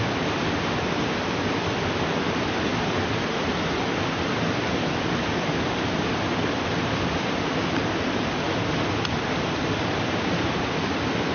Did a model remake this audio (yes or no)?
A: no